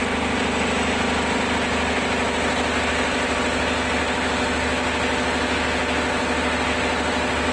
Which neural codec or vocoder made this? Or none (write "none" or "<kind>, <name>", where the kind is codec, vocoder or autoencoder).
none